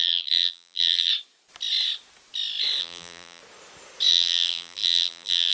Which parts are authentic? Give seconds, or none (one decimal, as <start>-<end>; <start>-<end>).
1.1-2.8; 3.4-4.1